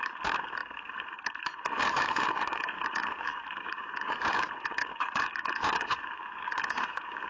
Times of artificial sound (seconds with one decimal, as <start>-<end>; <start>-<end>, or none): 0.0-7.3